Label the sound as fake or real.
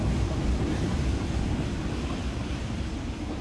real